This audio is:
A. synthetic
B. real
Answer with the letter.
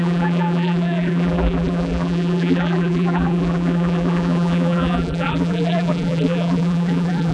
A